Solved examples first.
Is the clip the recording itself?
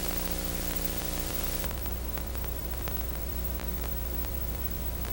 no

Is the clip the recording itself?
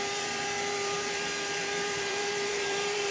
no